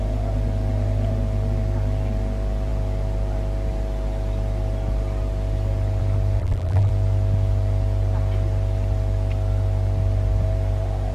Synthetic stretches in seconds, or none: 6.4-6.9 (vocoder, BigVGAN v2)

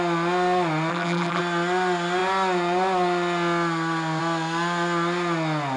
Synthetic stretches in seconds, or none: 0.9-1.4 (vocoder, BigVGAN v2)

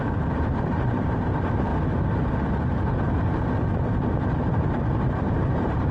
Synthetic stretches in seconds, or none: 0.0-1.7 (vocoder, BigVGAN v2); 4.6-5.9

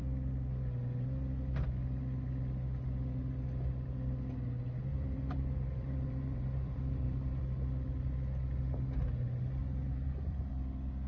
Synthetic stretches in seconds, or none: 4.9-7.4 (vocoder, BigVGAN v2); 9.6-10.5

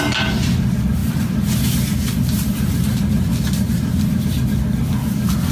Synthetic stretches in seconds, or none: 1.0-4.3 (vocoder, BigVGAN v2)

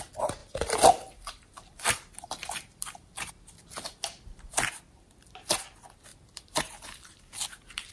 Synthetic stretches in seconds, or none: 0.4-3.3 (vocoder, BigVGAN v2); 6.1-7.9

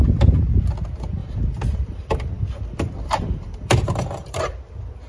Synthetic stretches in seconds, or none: 1.2-4.3 (vocoder, BigVGAN v2)

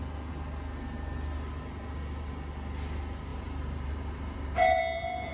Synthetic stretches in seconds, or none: 3.3-4.8 (vocoder, BigVGAN v2)